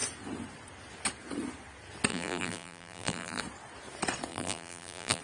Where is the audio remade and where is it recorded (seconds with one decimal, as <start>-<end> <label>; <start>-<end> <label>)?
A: 0.0-2.1 recorded; 2.1-3.4 remade; 3.4-4.3 recorded; 4.3-5.2 remade